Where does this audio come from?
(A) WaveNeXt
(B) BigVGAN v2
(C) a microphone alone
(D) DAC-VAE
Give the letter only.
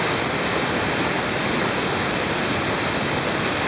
C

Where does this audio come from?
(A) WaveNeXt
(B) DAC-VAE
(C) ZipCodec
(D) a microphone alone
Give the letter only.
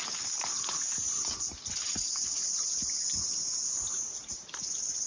D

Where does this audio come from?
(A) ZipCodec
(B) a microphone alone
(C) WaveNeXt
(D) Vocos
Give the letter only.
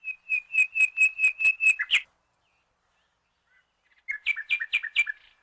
B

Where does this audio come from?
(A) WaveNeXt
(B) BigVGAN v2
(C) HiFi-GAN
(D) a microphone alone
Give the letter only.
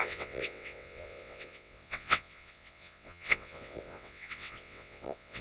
A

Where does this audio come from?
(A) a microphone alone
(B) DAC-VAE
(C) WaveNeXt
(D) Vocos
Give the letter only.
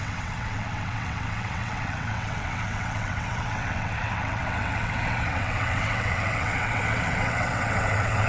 C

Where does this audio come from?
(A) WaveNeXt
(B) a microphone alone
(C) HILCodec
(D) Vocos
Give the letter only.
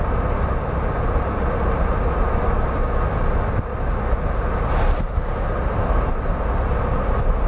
B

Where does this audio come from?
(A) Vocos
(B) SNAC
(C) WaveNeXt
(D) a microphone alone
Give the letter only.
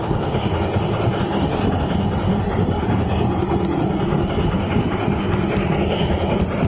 D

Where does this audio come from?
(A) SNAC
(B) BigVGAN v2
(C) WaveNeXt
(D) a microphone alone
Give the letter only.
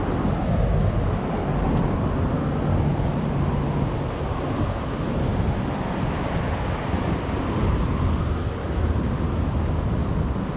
D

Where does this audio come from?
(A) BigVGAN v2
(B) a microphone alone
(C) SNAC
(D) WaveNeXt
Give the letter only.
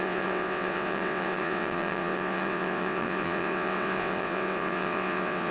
D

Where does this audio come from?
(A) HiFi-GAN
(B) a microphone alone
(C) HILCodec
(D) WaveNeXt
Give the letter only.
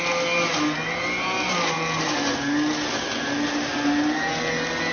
B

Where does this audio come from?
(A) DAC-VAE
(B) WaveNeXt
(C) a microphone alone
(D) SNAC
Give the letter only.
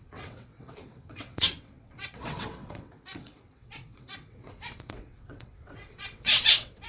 B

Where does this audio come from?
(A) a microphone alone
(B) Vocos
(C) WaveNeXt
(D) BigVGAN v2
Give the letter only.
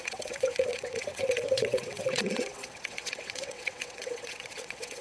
C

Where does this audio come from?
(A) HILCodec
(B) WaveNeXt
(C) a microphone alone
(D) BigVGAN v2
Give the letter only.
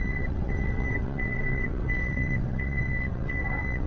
B